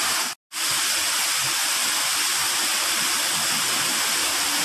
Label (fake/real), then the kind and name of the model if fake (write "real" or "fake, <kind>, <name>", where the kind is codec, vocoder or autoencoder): real